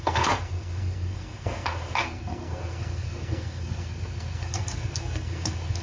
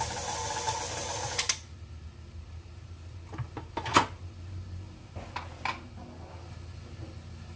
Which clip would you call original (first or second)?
second